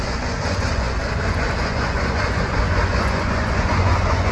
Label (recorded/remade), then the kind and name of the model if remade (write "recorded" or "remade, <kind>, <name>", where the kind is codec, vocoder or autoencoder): remade, vocoder, Vocos